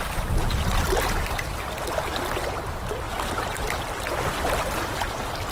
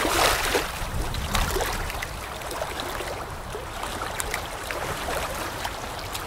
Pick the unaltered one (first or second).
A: first